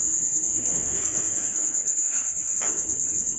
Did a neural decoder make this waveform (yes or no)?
yes